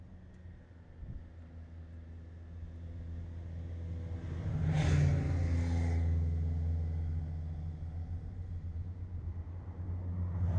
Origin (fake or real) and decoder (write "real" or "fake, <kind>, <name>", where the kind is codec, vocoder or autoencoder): real